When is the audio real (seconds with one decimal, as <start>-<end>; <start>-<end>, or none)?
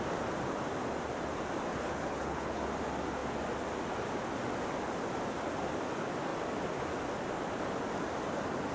0.0-1.8; 2.6-8.7